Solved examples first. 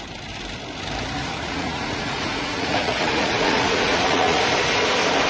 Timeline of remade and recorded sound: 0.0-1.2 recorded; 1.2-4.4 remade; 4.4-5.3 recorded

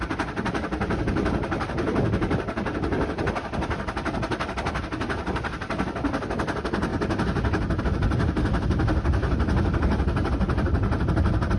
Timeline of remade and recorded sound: 0.0-11.6 recorded

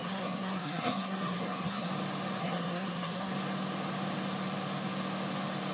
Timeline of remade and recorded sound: 0.0-1.9 remade; 1.9-2.4 recorded; 2.4-3.3 remade; 3.3-5.7 recorded

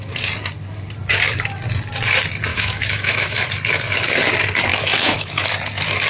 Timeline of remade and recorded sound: 0.0-2.5 recorded; 2.5-3.5 remade; 3.5-4.7 recorded; 4.7-5.5 remade; 5.5-6.1 recorded

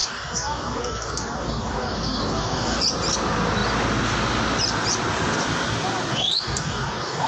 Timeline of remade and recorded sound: 0.0-2.8 remade; 2.8-6.1 recorded; 6.1-7.3 remade

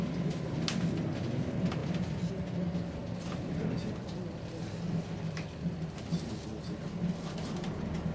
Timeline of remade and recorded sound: 0.0-1.8 recorded; 1.8-2.3 remade; 2.3-8.1 recorded